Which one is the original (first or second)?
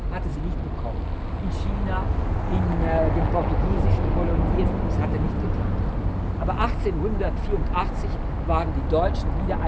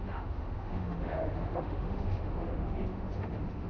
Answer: first